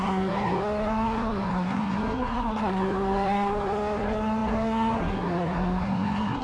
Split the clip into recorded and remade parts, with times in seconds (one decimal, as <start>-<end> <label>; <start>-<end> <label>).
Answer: 0.0-6.4 remade